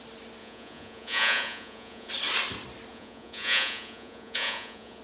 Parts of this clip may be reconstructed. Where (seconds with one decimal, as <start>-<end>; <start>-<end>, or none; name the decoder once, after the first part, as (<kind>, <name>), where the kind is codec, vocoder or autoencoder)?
0.4-2.1 (vocoder, Vocos); 2.9-5.0